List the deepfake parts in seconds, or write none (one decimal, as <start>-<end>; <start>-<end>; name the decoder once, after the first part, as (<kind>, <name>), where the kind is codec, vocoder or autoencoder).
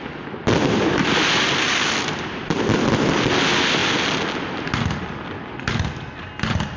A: none